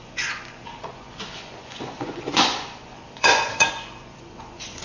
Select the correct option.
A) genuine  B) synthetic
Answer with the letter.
B